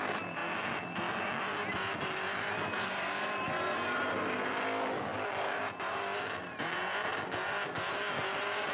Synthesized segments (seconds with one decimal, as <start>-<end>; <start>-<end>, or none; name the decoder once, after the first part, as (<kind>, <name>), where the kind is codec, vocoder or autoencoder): none